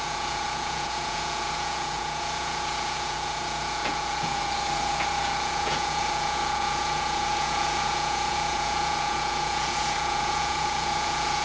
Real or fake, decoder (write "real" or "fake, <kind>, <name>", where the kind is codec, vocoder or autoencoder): fake, vocoder, Vocos